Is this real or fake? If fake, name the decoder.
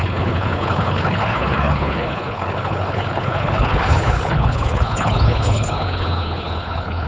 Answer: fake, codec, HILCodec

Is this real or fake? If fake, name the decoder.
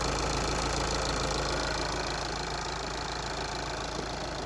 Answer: real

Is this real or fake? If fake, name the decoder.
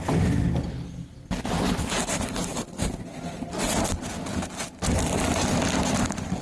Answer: real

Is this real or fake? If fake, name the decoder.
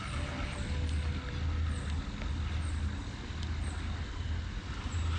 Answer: real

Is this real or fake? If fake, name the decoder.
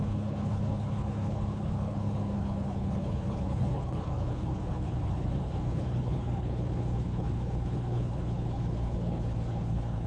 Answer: fake, codec, HILCodec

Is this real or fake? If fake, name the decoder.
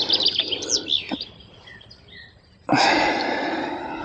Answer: real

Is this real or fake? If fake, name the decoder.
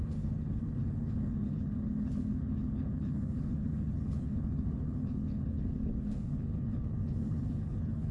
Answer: fake, codec, HILCodec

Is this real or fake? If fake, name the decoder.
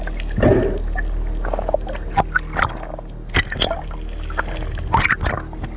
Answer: real